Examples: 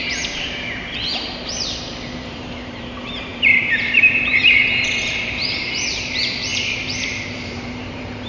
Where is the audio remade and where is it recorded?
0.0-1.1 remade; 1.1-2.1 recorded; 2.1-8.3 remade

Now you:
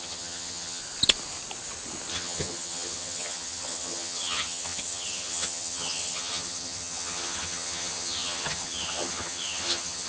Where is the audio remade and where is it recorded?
0.0-0.8 remade; 0.8-2.1 recorded; 2.1-10.1 remade

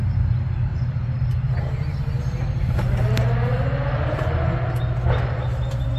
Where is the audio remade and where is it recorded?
0.0-6.0 recorded

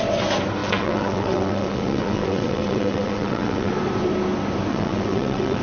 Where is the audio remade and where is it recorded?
0.0-0.6 recorded; 0.6-3.7 remade; 3.7-4.7 recorded; 4.7-5.6 remade

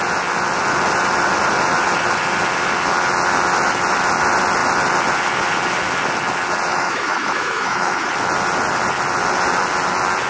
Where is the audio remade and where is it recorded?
0.0-6.7 recorded; 6.7-8.1 remade; 8.1-10.3 recorded

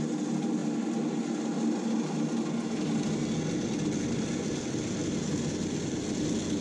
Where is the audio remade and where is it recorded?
0.0-6.6 recorded

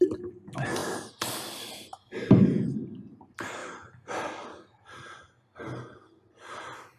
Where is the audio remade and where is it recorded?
0.0-3.6 recorded; 3.6-5.2 remade; 5.2-7.0 recorded